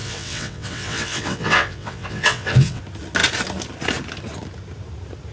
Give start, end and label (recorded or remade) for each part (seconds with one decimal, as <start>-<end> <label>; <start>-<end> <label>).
0.0-2.8 remade; 2.8-5.3 recorded